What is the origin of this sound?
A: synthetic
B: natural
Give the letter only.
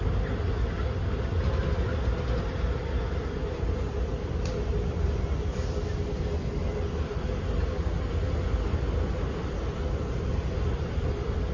B